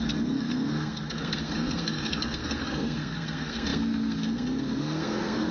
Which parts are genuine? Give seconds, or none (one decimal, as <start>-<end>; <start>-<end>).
none